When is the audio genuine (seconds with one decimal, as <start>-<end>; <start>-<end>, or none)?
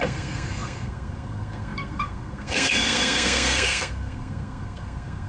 none